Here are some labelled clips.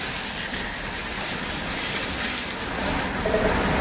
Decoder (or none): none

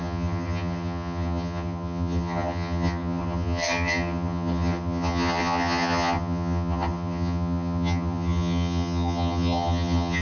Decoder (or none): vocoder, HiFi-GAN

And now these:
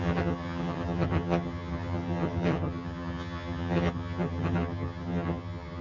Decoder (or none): vocoder, HiFi-GAN